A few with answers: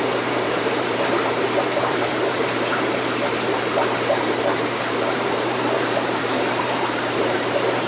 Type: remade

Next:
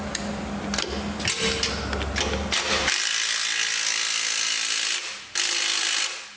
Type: recorded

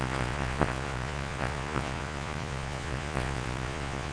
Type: remade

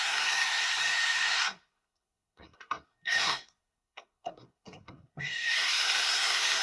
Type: remade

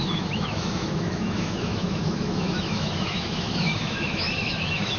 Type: remade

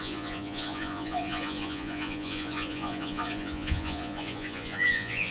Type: remade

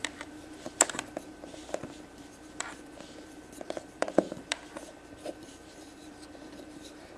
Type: remade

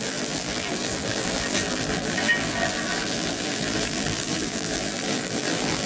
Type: remade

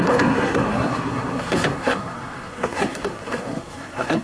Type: remade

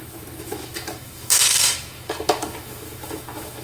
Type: remade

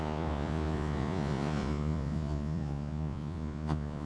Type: remade